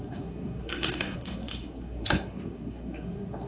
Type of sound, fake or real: fake